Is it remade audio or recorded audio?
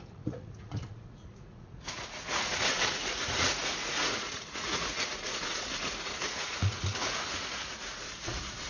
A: remade